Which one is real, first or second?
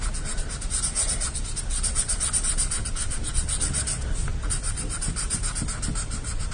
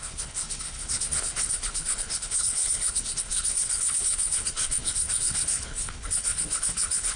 first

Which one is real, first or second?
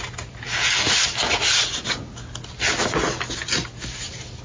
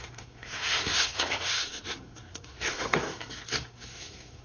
first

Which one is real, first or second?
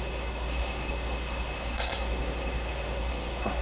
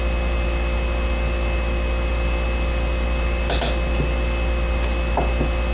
second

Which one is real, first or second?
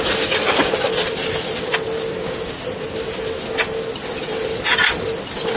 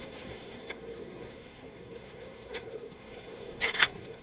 first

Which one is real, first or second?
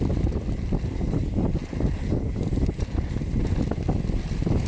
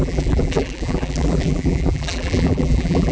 first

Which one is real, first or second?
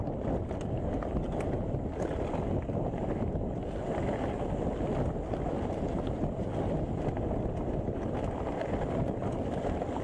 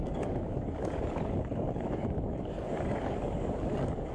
first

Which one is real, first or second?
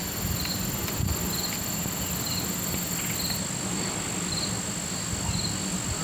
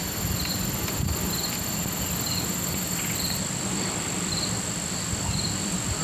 first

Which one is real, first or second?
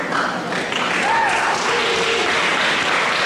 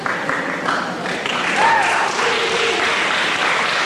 first